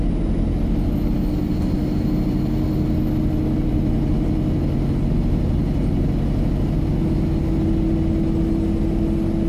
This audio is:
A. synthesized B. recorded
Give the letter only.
B